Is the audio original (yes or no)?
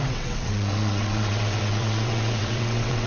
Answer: no